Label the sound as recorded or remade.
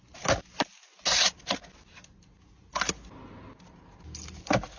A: recorded